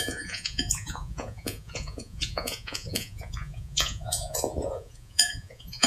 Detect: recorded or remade remade